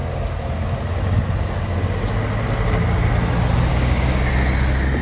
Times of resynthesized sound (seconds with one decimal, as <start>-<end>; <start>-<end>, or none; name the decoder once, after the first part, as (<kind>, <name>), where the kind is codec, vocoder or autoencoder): 3.7-4.3 (codec, DAC)